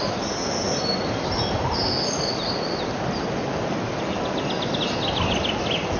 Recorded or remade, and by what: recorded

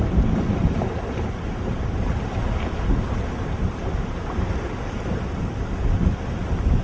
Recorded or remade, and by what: recorded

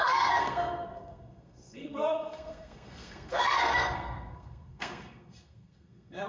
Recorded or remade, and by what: remade, codec, SNAC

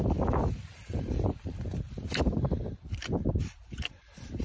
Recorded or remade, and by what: remade, vocoder, BigVGAN v2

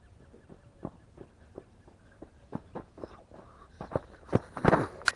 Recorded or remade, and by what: recorded